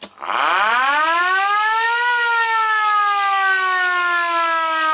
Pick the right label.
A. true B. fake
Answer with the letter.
A